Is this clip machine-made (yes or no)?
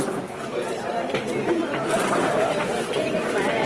yes